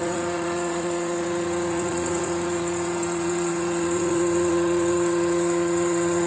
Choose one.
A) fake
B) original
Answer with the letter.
A